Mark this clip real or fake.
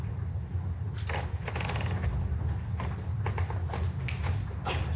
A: real